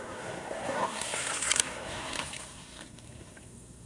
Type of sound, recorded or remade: remade